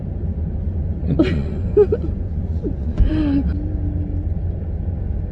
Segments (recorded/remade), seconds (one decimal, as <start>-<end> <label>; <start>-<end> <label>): 0.0-1.0 recorded; 1.0-3.1 remade; 3.1-5.3 recorded